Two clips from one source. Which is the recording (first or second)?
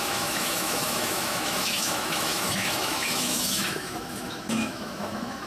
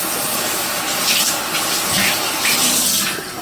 second